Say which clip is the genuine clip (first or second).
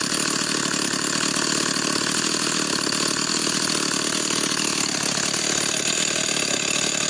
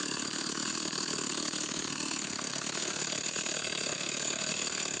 first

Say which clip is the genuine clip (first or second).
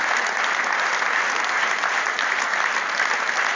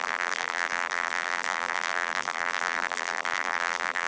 first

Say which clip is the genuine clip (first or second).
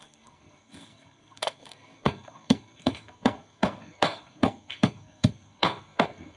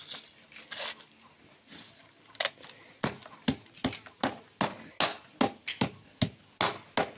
second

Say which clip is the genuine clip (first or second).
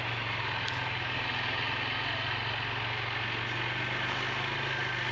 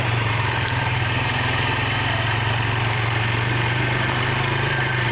first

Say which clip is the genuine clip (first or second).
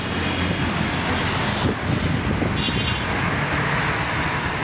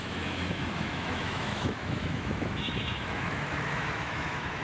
first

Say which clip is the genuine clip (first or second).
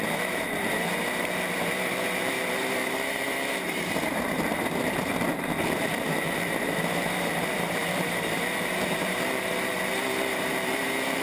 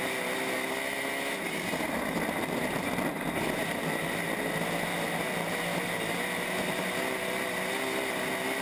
second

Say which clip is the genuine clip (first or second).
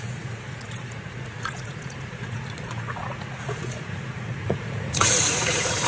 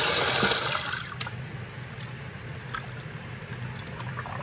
second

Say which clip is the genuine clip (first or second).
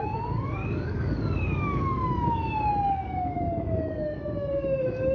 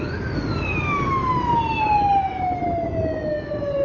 second